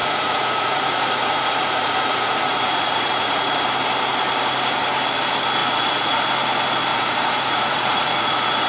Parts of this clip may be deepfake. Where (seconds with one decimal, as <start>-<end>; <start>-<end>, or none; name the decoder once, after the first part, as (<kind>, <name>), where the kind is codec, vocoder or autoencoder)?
0.0-3.7 (vocoder, Vocos); 5.6-6.2; 6.9-8.7